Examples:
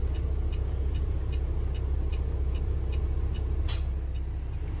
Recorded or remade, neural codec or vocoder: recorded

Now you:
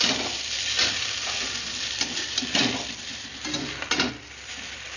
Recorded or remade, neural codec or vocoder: remade, vocoder, BigVGAN v2